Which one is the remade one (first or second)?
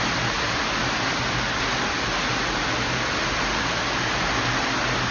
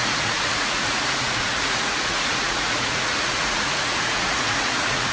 second